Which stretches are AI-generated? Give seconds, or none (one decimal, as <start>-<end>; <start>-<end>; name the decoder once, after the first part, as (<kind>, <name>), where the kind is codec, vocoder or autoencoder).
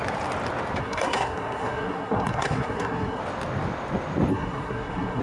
0.8-3.2 (codec, SNAC); 4.3-5.2